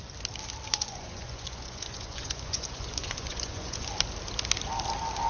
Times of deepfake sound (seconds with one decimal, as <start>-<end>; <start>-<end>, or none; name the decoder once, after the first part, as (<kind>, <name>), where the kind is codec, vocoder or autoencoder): 0.7-3.9 (vocoder, Vocos)